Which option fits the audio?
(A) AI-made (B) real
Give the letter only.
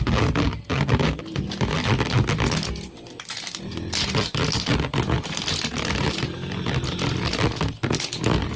B